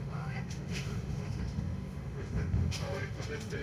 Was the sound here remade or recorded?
remade